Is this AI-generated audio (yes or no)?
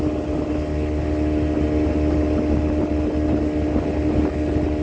no